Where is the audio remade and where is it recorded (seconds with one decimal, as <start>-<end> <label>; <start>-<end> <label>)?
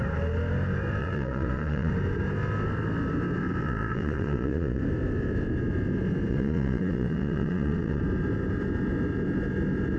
0.0-1.0 recorded; 1.0-1.9 remade; 1.9-3.6 recorded; 3.6-4.8 remade; 4.8-6.3 recorded; 6.3-8.0 remade; 8.0-10.0 recorded